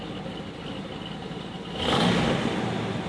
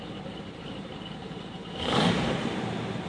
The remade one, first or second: second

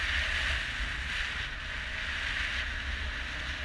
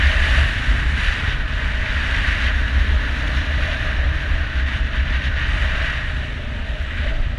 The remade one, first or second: second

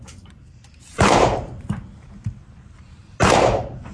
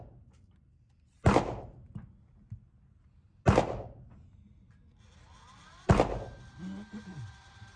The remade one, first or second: first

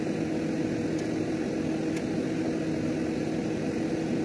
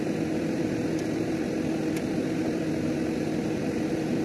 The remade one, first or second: second